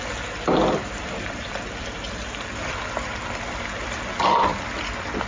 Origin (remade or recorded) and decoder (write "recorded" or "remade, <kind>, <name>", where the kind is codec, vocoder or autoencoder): remade, vocoder, BigVGAN v2